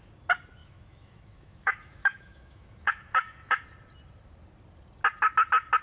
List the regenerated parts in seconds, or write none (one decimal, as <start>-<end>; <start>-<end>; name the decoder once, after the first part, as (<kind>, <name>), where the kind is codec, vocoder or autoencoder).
0.6-3.6 (autoencoder, DAC-VAE)